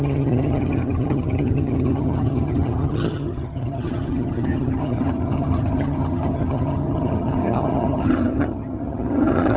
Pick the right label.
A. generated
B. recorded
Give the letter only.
A